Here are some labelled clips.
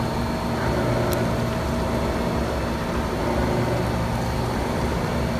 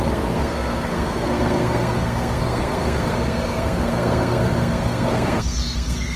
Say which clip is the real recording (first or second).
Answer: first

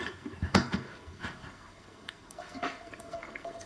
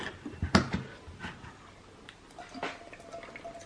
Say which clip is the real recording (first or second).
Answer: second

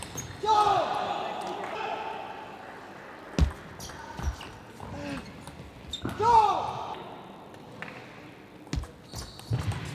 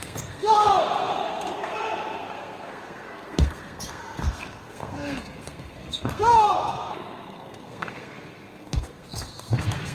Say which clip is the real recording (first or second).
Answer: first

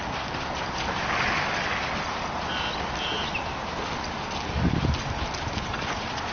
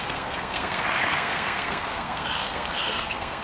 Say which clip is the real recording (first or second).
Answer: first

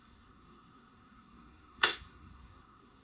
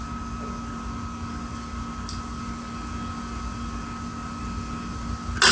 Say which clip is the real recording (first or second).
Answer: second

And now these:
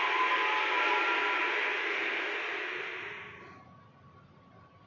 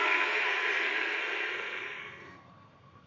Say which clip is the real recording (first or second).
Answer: first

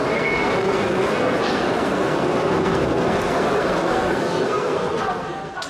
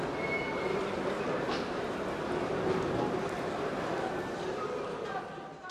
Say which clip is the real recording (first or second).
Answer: second